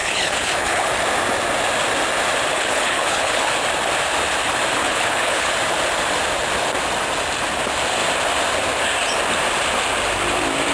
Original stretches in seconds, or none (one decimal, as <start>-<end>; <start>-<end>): 0.9-2.5; 3.5-4.8; 5.5-10.7